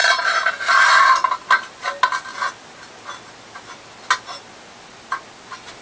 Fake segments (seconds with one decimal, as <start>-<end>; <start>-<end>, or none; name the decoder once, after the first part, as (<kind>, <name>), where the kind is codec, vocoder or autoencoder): 0.0-0.5 (vocoder, BigVGAN v2)